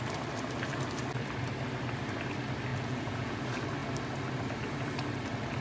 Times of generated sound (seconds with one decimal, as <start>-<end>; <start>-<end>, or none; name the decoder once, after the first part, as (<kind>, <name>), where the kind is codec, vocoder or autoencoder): 2.7-3.4 (vocoder, Vocos)